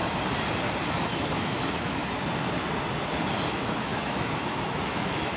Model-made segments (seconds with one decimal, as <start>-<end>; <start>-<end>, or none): 0.9-2.0; 3.5-5.4